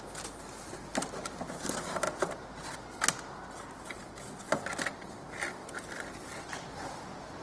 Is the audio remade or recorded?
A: recorded